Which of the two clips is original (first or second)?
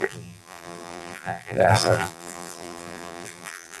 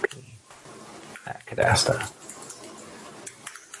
second